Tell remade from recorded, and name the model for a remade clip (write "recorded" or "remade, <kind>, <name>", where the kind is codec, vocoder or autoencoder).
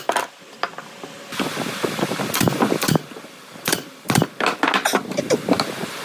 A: recorded